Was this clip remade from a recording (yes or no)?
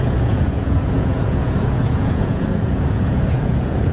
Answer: yes